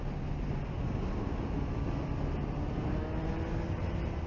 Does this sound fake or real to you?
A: real